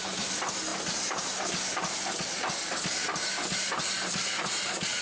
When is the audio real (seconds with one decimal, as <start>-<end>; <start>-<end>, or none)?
0.0-5.0